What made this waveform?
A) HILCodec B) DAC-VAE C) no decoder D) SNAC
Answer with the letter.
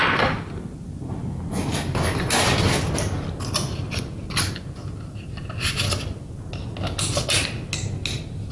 C